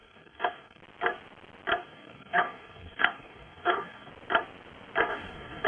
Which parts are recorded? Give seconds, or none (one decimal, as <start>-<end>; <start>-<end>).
0.8-1.8; 4.1-5.1